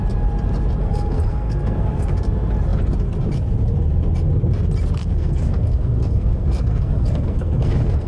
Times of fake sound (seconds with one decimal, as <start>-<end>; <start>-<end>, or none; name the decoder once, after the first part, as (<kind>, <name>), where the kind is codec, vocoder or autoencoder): 0.8-2.1 (codec, SNAC); 5.0-8.1